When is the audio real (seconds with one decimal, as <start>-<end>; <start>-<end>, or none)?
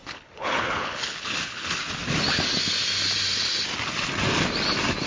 1.8-5.1